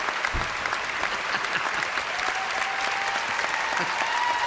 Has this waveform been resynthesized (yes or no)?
no